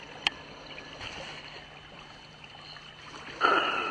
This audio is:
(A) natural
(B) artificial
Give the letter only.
A